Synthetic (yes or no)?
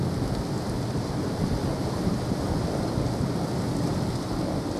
no